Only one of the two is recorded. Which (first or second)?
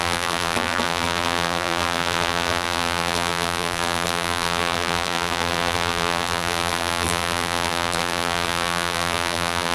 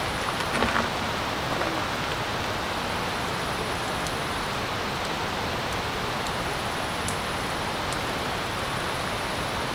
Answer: second